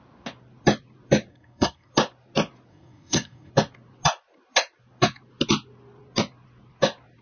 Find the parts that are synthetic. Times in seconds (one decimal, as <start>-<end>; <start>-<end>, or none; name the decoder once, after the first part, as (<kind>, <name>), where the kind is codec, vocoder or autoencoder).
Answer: 1.3-1.9 (codec, SNAC); 2.7-3.5

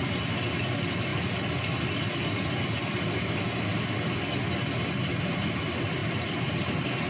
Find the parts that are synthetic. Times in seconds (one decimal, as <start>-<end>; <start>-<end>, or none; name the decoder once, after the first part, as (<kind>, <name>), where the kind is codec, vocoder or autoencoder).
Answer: 6.0-7.1 (vocoder, BigVGAN v2)

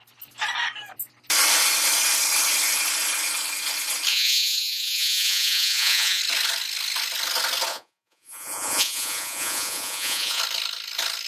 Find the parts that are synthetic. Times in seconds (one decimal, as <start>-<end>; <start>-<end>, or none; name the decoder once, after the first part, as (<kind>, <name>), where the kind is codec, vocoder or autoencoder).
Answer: 4.1-6.2 (vocoder, Vocos); 7.7-10.4

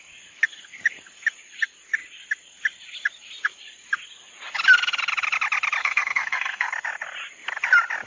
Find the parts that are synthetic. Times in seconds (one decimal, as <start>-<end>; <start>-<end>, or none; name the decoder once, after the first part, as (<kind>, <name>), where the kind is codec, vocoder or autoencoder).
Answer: 5.8-6.7 (codec, SNAC)

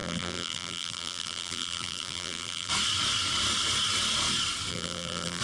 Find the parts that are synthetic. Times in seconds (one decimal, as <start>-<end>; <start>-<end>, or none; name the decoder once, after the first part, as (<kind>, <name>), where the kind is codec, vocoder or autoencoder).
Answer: 0.0-2.7 (vocoder, BigVGAN v2); 4.7-5.4

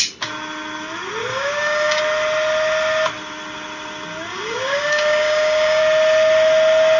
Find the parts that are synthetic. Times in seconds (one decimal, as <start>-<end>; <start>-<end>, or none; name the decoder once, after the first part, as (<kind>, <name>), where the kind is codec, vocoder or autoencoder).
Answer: 1.3-2.0 (codec, DAC); 4.3-5.8